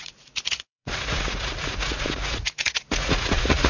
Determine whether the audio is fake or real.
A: fake